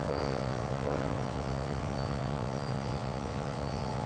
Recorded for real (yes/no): no